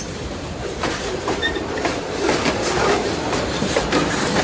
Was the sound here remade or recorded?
remade